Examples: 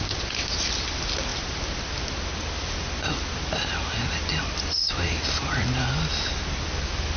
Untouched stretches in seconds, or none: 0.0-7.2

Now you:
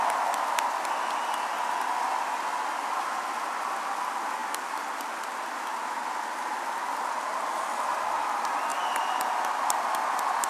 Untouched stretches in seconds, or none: 0.0-10.5

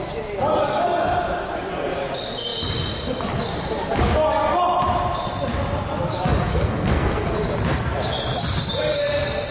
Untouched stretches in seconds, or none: 0.0-6.5; 7.3-9.5

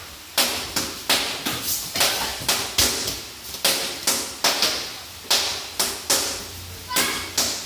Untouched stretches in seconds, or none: 0.0-7.7

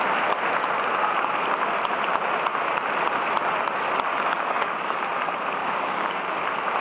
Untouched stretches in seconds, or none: 0.0-4.1; 5.0-5.6; 6.2-6.8

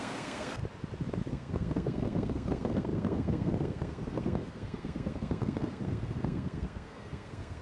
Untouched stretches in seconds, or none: 0.6-1.3

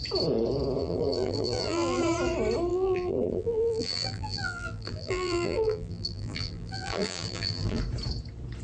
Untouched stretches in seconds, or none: 0.0-0.8; 2.0-2.7; 7.8-8.6

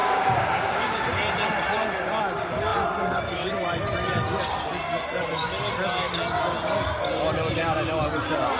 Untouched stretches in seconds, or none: 1.0-8.6